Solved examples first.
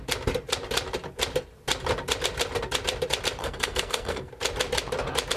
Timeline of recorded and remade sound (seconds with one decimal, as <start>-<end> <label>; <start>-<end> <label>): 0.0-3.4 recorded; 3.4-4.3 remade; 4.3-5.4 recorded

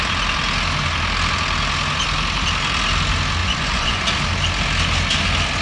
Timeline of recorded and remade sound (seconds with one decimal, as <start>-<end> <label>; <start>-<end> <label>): 0.0-3.4 recorded; 3.4-4.0 remade; 4.0-5.6 recorded

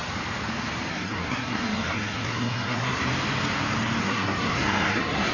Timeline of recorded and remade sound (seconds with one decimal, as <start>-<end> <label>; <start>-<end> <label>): 0.0-0.9 recorded; 0.9-3.0 remade; 3.0-4.0 recorded; 4.0-5.3 remade

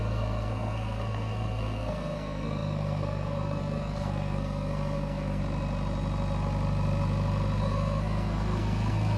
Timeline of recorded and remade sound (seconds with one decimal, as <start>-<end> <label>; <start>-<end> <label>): 0.0-5.4 remade; 5.4-7.6 recorded; 7.6-9.2 remade

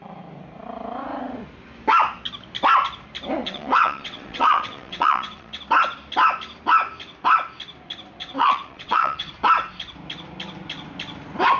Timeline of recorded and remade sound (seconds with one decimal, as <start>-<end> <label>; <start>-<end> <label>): 0.0-3.4 recorded; 3.4-5.6 remade; 5.6-8.2 recorded; 8.2-9.3 remade; 9.3-11.6 recorded